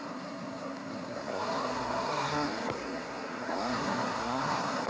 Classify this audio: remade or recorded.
remade